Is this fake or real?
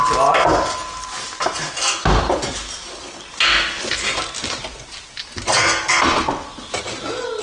real